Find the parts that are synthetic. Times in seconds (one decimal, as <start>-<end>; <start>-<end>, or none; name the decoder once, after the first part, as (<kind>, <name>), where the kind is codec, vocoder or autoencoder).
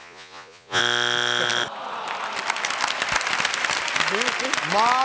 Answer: 0.0-0.8 (vocoder, Vocos)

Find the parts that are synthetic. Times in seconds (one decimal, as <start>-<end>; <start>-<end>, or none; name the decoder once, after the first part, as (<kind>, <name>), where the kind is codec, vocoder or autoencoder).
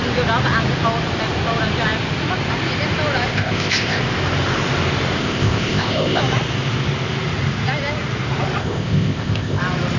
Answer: 3.3-4.0 (codec, ZipCodec); 5.2-6.2; 8.6-9.6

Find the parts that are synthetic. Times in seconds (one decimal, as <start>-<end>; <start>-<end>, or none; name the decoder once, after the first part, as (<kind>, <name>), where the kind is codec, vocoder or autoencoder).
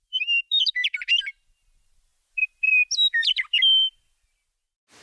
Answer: none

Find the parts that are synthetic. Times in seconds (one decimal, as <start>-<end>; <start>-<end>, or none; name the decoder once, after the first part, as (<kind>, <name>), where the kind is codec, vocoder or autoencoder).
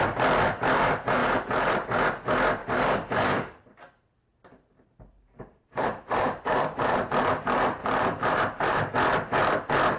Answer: 1.2-2.0 (vocoder, BigVGAN v2); 2.6-3.6; 4.3-7.1; 7.8-8.8